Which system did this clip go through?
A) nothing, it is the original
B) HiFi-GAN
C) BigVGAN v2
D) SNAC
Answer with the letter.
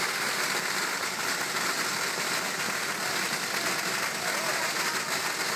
A